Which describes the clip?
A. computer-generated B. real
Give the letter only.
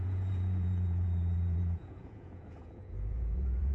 A